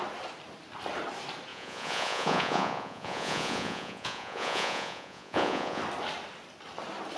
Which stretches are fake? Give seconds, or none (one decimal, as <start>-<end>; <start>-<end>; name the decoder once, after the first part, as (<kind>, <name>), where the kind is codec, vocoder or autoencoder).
1.5-5.8 (vocoder, Vocos)